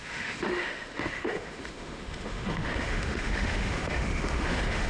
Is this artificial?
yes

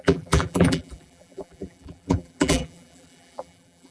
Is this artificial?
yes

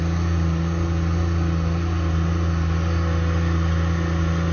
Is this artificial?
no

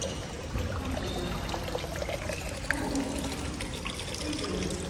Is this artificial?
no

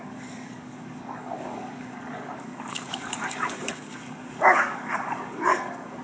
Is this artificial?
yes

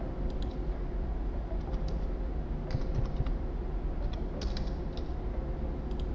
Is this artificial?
no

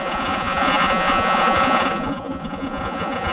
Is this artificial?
yes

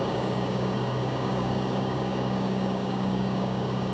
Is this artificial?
yes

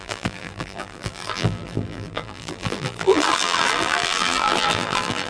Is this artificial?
yes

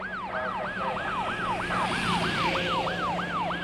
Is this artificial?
no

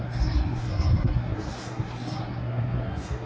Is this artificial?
yes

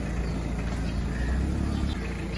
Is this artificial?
no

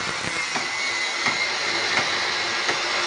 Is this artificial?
no